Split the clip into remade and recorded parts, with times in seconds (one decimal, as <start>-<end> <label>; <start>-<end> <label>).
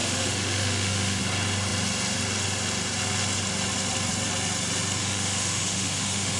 0.0-1.2 remade; 1.2-5.0 recorded; 5.0-6.4 remade